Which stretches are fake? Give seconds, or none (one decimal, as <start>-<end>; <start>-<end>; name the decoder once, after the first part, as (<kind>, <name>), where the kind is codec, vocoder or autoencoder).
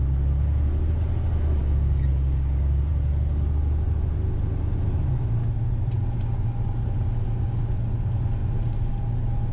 1.6-2.9 (codec, DAC)